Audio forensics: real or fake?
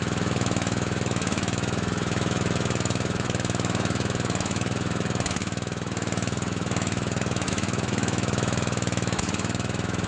fake